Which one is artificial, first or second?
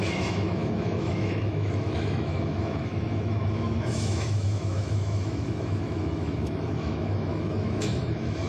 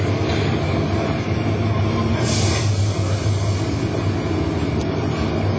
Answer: first